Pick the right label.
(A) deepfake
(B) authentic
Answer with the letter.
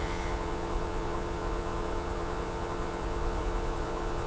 A